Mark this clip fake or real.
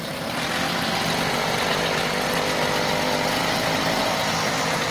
real